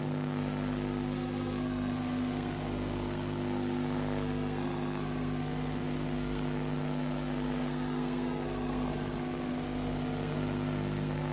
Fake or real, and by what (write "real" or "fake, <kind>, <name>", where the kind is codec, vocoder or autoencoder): fake, codec, SNAC